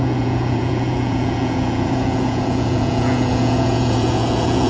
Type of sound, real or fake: fake